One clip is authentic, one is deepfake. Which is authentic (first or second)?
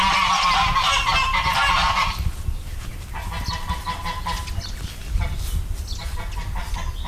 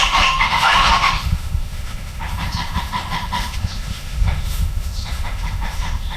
first